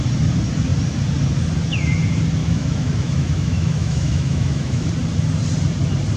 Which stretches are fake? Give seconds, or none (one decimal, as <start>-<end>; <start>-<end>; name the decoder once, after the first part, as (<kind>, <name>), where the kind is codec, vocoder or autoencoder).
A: 2.4-4.9 (autoencoder, DAC-VAE)